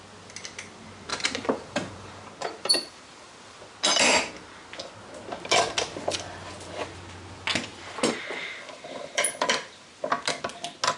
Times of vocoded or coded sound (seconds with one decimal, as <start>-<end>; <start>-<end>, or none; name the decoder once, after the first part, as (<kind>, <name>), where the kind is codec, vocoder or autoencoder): 1.1-3.6 (vocoder, BigVGAN v2); 8.4-10.0